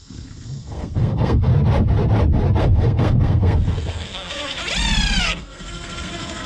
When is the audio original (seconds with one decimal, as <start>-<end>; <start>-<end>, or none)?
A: 1.5-2.6; 4.6-5.2